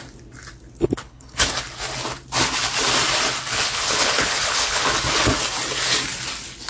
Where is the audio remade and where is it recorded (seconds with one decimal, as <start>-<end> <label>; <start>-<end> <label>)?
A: 0.0-0.8 recorded; 0.8-1.5 remade; 1.5-3.5 recorded; 3.5-4.9 remade; 4.9-6.7 recorded